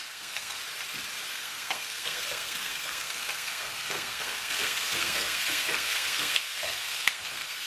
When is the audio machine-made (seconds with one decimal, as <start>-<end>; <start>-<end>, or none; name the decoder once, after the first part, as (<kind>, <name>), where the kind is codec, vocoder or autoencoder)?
0.0-0.6 (codec, SNAC); 1.3-7.7